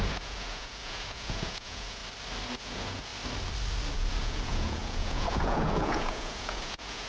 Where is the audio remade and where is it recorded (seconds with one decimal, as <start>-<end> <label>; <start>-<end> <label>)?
0.0-2.0 remade; 2.0-2.6 recorded; 2.6-3.1 remade; 3.1-3.9 recorded; 3.9-7.1 remade